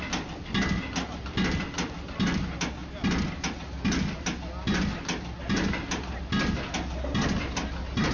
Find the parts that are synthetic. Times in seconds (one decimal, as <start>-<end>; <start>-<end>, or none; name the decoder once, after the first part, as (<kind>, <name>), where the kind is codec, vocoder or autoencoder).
none